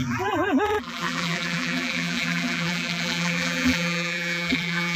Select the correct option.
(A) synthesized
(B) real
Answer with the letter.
A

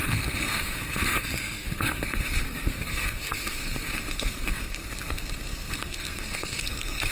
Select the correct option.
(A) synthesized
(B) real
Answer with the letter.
A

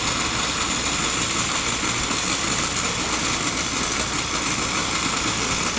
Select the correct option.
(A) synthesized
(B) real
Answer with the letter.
B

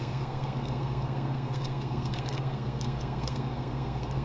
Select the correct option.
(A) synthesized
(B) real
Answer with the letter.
A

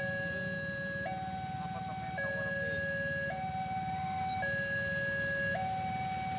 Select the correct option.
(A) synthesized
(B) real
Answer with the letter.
B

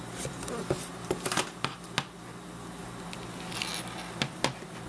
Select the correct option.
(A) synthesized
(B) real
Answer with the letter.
B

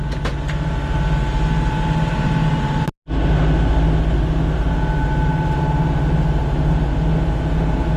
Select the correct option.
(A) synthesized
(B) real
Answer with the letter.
B